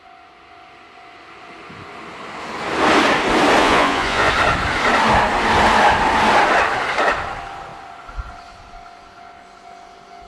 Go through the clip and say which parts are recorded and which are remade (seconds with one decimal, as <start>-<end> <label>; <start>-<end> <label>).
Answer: 0.0-3.6 recorded; 3.6-4.3 remade; 4.3-10.3 recorded